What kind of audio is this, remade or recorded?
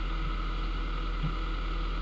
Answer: recorded